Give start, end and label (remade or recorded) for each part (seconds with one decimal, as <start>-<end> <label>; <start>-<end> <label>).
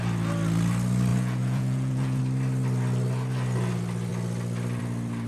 0.0-1.1 recorded; 1.1-2.2 remade; 2.2-5.3 recorded